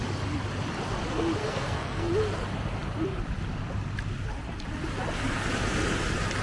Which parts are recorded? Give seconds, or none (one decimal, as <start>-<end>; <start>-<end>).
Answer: 0.0-1.4; 2.1-6.4

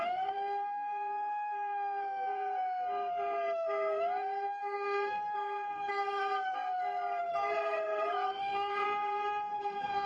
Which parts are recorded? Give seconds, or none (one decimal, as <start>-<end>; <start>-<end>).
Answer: none

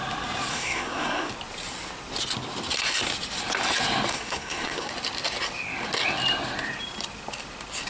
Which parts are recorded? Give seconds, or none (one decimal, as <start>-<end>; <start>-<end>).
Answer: 0.0-0.5; 1.3-4.1; 4.9-7.9

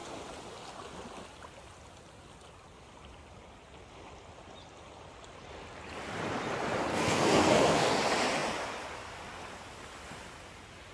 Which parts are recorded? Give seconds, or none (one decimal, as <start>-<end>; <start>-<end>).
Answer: 0.0-6.9; 7.9-10.9

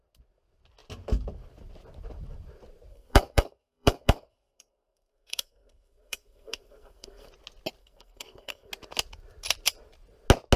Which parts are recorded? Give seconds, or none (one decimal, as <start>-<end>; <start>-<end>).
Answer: 0.0-2.9; 7.3-7.8; 8.7-10.6